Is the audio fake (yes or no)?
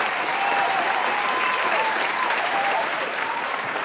yes